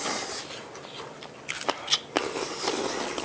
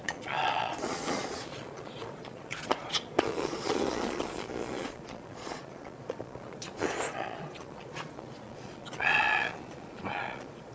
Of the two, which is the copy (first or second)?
second